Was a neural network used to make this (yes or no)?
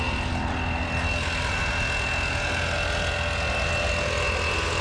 no